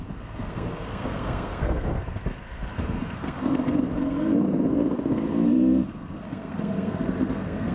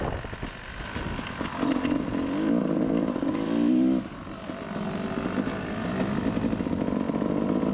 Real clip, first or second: second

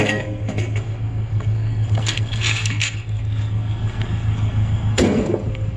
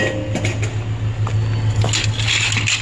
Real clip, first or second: second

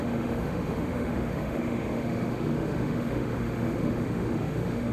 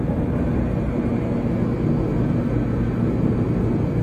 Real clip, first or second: second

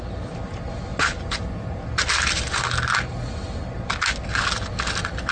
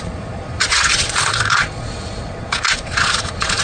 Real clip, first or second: first